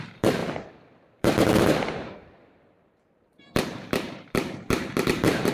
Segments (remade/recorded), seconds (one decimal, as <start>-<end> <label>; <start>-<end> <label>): 0.0-0.4 remade; 0.4-1.1 recorded; 1.1-5.5 remade

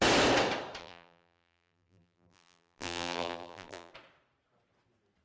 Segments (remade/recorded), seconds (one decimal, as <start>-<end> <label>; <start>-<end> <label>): 0.0-0.8 recorded; 0.8-3.9 remade; 3.9-5.2 recorded

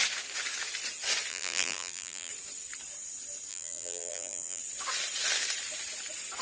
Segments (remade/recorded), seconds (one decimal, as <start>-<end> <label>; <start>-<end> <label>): 0.0-1.3 recorded; 1.3-2.3 remade; 2.3-3.5 recorded; 3.5-4.6 remade; 4.6-6.4 recorded